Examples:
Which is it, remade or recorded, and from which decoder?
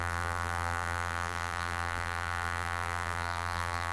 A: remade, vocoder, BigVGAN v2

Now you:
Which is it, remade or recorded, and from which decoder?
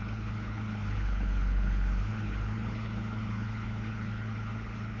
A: remade, codec, HILCodec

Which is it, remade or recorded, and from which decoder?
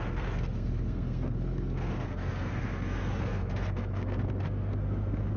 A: remade, codec, SNAC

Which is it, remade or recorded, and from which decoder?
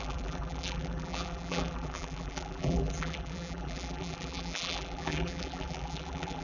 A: remade, vocoder, BigVGAN v2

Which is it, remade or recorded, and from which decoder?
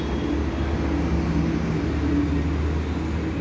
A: recorded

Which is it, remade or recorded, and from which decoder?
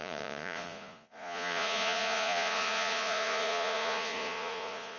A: remade, vocoder, Vocos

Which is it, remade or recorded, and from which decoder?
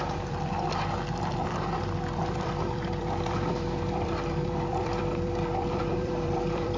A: remade, vocoder, BigVGAN v2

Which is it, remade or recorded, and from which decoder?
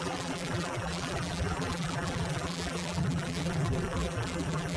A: remade, vocoder, BigVGAN v2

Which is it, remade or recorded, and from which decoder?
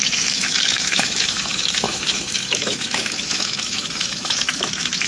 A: remade, autoencoder, DAC-VAE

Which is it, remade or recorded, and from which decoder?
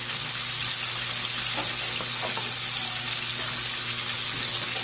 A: recorded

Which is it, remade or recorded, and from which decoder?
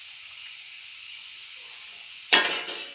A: remade, vocoder, Vocos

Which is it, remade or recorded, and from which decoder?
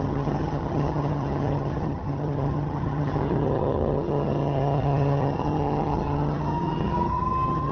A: remade, vocoder, HiFi-GAN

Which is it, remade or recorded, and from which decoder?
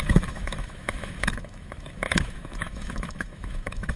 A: remade, autoencoder, DAC-VAE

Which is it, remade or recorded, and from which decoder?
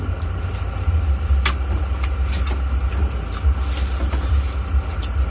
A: recorded